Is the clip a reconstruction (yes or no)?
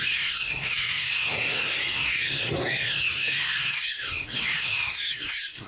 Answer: yes